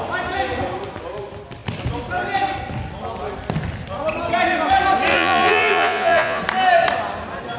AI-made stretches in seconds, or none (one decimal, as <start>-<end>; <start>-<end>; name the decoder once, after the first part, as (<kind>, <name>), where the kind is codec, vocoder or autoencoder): 5.1-6.4 (vocoder, Vocos)